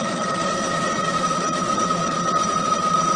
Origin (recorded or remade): remade